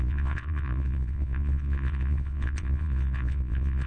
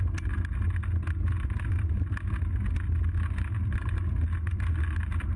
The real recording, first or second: second